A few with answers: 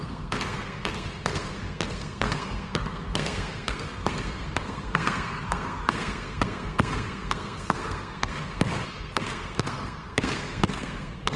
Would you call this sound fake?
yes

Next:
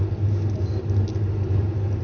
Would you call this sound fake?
no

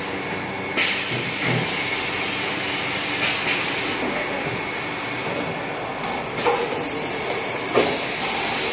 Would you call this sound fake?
no